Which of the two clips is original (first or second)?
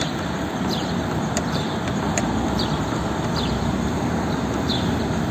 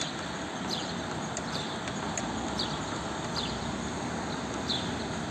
second